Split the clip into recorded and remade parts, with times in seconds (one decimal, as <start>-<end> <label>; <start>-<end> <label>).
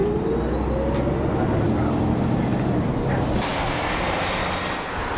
0.0-5.2 recorded